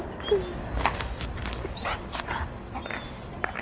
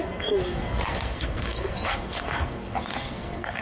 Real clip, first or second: first